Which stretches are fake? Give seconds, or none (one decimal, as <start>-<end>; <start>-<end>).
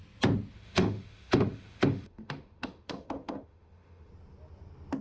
0.5-4.1